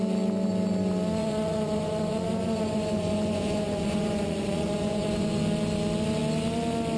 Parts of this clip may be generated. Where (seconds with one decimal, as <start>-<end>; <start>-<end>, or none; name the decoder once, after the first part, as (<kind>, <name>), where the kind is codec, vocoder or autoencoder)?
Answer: 1.2-5.4 (vocoder, Vocos)